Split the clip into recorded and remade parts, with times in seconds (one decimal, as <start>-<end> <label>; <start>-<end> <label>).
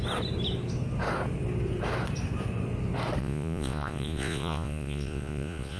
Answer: 0.0-3.2 recorded; 3.2-5.8 remade